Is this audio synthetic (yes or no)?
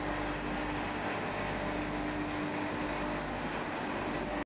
no